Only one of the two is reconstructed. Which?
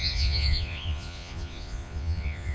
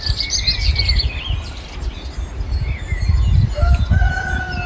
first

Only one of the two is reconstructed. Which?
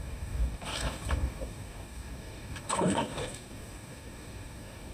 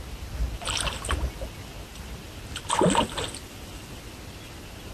first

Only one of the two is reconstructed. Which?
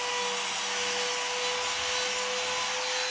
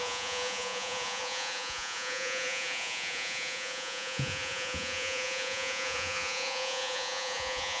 second